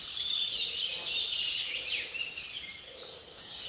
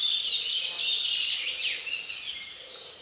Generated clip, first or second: first